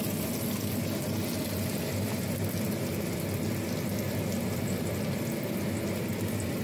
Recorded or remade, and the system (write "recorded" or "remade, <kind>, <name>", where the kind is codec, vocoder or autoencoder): recorded